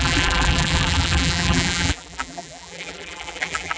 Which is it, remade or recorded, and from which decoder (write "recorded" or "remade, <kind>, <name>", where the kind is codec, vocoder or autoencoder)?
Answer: remade, vocoder, BigVGAN v2